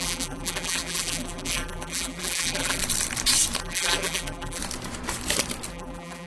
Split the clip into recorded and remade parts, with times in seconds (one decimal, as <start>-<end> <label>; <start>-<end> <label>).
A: 0.0-2.8 remade; 2.8-3.6 recorded; 3.6-4.6 remade; 4.6-5.7 recorded; 5.7-6.3 remade